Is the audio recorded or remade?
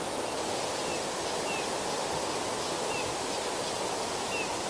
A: recorded